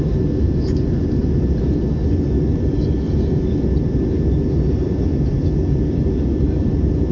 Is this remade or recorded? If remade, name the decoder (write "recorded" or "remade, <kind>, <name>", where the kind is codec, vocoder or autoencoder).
recorded